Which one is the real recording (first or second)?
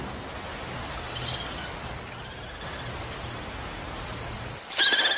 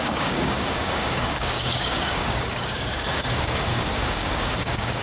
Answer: first